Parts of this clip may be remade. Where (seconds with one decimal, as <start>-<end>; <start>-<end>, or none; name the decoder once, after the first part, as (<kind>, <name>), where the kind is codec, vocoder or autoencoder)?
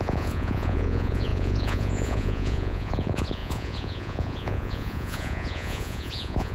0.0-6.5 (vocoder, Vocos)